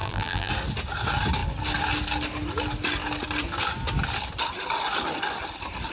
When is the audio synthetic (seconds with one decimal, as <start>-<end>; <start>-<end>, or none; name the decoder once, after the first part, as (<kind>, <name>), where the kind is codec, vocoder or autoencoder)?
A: 0.0-0.5 (vocoder, BigVGAN v2)